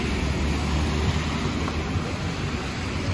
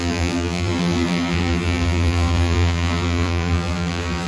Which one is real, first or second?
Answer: first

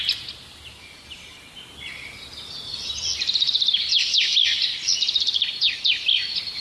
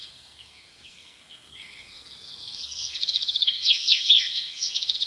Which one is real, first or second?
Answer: first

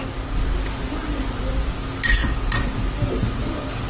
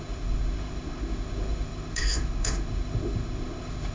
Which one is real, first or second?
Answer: first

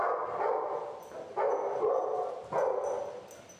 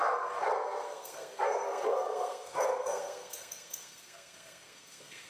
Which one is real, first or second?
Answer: first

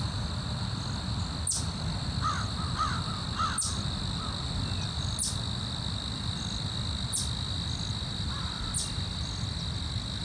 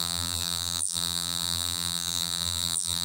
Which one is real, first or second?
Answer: first